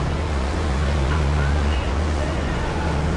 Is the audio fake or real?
fake